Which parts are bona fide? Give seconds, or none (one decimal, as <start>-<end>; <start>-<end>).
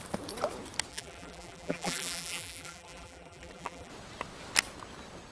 0.0-0.9; 3.9-5.3